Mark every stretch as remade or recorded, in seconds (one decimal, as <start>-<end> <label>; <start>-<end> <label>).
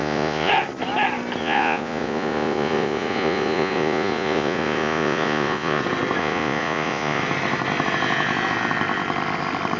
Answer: 0.0-0.5 remade; 0.5-1.4 recorded; 1.4-5.8 remade; 5.8-6.2 recorded; 6.2-7.2 remade; 7.2-9.8 recorded